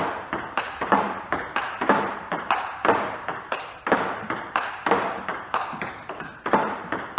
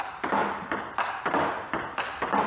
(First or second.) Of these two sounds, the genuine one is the second